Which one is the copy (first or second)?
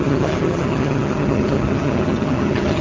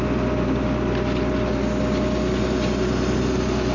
first